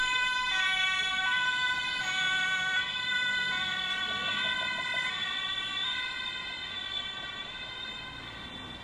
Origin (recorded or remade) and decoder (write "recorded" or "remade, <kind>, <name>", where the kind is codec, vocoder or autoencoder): recorded